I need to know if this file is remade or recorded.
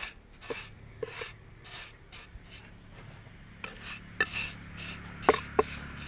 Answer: recorded